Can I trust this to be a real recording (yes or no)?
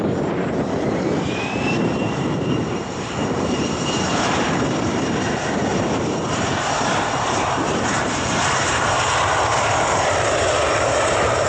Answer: no